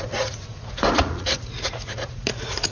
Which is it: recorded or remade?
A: remade